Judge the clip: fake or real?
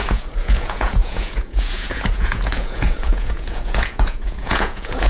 fake